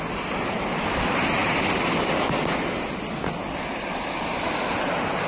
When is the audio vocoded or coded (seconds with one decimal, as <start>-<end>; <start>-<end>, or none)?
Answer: none